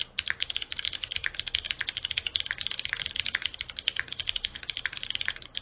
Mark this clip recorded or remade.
recorded